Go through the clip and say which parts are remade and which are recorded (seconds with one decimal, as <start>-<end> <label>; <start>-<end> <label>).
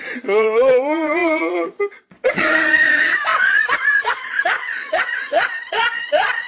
0.0-6.5 remade